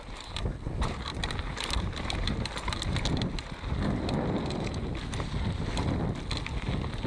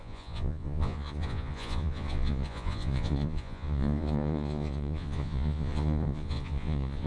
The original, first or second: first